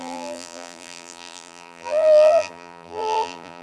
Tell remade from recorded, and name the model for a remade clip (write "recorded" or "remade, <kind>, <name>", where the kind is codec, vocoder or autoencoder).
remade, vocoder, BigVGAN v2